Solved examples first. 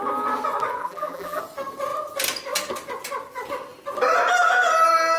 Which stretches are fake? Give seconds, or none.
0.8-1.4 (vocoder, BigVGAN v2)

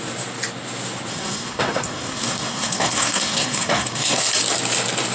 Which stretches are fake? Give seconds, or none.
1.1-4.2 (codec, SNAC)

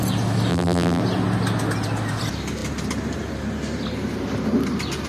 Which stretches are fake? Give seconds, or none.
0.5-1.0 (vocoder, BigVGAN v2)

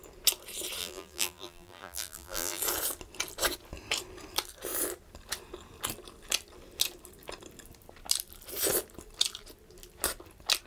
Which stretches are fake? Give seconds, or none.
0.8-2.6 (vocoder, BigVGAN v2)

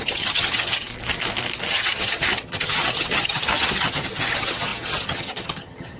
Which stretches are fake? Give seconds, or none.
0.0-0.9 (vocoder, HiFi-GAN); 1.7-6.0

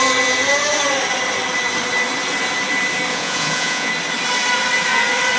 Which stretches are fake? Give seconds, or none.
3.1-3.9 (vocoder, Vocos)

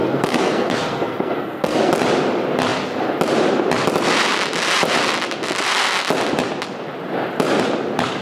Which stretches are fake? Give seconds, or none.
0.0-1.9 (codec, SNAC)